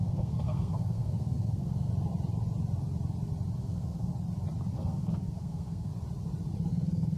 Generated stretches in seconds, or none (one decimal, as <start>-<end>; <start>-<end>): 0.0-1.9; 3.6-4.1; 4.7-5.9; 6.7-7.2